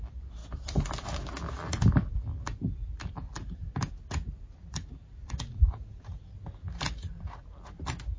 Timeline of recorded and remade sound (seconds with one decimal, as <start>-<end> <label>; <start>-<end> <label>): 0.0-5.2 recorded; 5.2-6.2 remade; 6.2-8.2 recorded